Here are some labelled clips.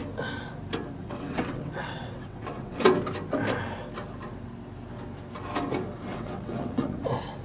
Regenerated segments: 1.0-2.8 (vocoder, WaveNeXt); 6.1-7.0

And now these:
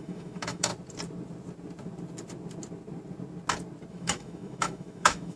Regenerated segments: 0.0-0.7 (autoencoder, DAC-VAE); 3.9-5.4

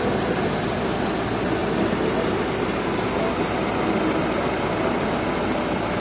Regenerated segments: none